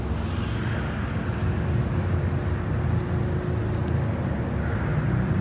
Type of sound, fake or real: real